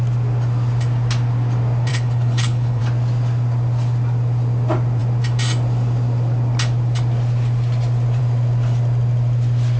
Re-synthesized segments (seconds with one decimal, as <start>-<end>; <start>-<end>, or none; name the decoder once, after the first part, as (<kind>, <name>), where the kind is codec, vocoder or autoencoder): 1.9-2.8 (codec, HILCodec)